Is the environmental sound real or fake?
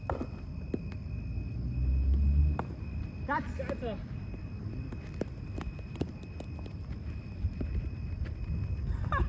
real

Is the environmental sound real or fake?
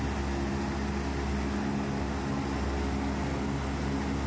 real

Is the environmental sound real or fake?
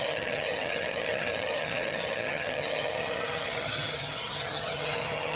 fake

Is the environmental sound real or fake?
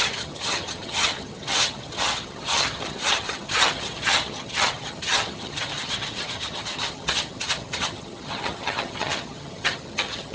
fake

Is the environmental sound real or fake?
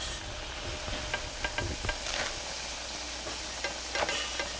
real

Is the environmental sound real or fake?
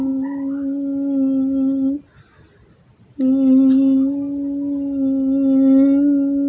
real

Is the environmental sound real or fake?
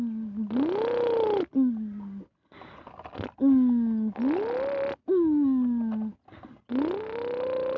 real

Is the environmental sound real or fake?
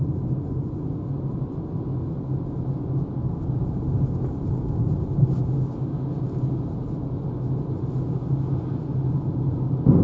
real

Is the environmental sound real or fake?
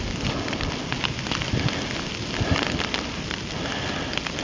real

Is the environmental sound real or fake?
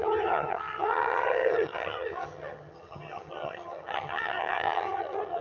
fake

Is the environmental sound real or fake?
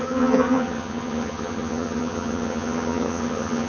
fake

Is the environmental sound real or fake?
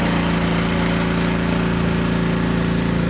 real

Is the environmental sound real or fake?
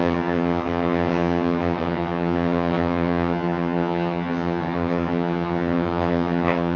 fake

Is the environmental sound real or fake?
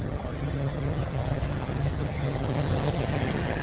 fake